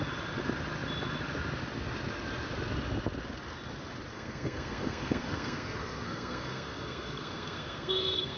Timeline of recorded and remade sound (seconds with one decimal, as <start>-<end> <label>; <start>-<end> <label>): 0.0-4.1 recorded; 4.1-8.4 remade